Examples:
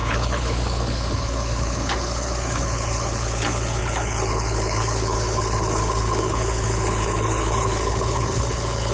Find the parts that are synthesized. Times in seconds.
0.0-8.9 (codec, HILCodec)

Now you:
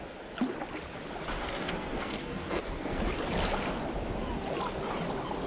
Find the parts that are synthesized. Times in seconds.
1.4-3.0 (codec, SNAC)

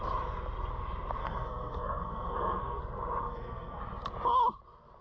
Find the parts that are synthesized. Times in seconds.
1.2-2.8 (codec, SNAC); 3.2-3.8

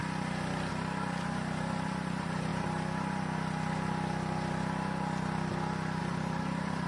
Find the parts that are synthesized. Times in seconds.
0.7-2.5 (vocoder, BigVGAN v2); 6.0-6.9

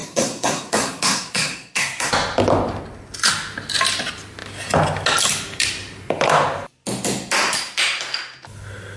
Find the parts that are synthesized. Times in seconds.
0.0-2.1 (codec, SNAC)

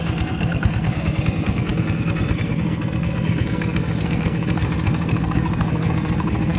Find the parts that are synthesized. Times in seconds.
0.0-6.6 (codec, SNAC)

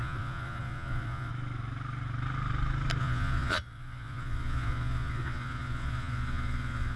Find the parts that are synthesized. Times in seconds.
0.0-1.3 (vocoder, Vocos); 3.0-7.0